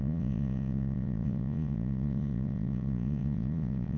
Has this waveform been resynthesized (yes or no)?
yes